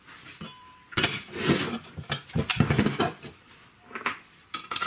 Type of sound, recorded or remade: remade